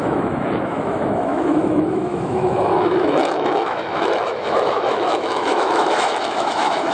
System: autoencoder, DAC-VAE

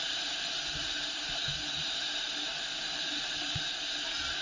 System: vocoder, BigVGAN v2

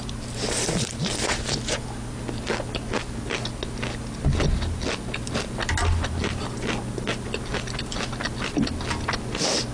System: none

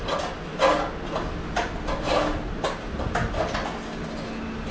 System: none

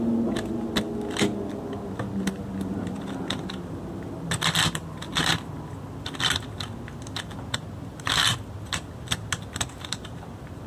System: none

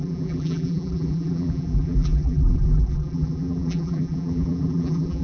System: vocoder, BigVGAN v2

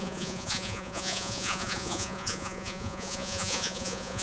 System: vocoder, Vocos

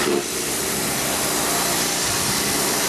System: none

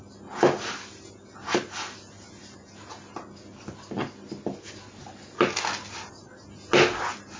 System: none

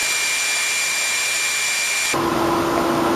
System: none